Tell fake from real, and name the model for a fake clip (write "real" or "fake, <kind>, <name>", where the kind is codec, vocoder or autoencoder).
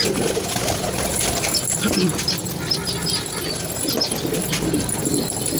real